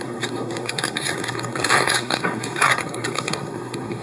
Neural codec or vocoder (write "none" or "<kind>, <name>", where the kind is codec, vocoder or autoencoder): codec, SNAC